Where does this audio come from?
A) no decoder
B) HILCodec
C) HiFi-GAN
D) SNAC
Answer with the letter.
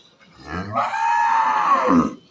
A